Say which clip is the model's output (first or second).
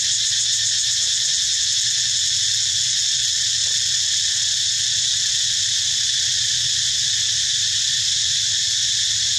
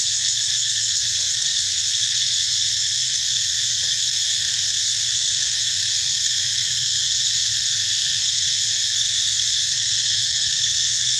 second